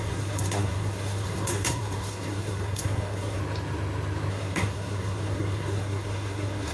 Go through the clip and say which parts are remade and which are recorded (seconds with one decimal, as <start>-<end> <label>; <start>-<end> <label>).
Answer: 0.0-3.4 remade; 3.4-4.3 recorded; 4.3-6.7 remade